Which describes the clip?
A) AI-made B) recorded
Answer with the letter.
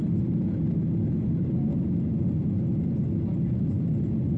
B